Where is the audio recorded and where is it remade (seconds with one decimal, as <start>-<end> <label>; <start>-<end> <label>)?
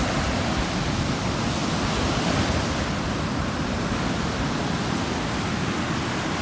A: 0.0-6.4 recorded